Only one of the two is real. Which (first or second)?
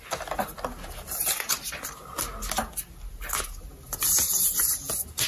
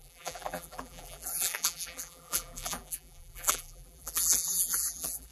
first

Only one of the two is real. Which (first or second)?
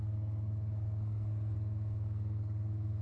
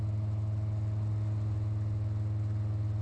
second